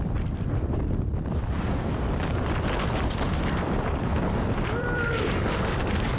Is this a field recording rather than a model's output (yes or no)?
no